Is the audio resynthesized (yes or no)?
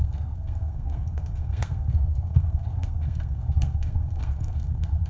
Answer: yes